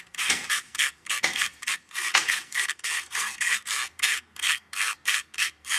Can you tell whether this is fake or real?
fake